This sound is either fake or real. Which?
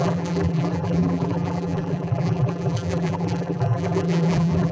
fake